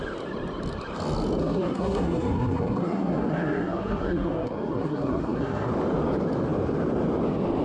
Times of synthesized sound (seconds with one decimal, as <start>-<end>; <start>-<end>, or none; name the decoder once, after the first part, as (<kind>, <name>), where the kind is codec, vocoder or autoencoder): 1.4-5.7 (codec, SNAC)